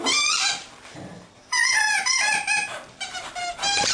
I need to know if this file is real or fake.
fake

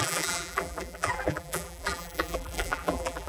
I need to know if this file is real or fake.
fake